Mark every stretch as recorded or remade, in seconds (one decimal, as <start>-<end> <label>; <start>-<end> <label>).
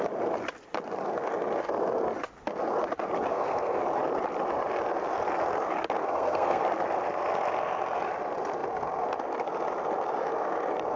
0.0-3.3 recorded; 3.3-3.8 remade; 3.8-6.0 recorded; 6.0-6.6 remade; 6.6-11.0 recorded